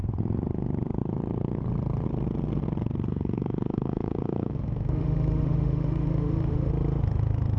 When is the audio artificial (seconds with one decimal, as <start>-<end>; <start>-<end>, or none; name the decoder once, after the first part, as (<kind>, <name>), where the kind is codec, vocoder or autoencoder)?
3.1-6.7 (autoencoder, DAC-VAE)